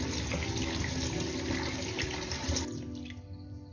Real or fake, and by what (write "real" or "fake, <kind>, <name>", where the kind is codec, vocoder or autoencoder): real